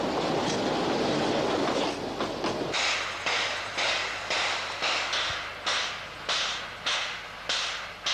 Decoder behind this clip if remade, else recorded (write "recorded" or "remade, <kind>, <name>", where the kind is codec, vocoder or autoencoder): recorded